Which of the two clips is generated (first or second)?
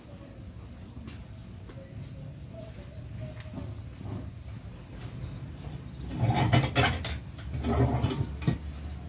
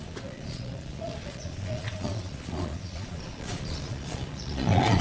second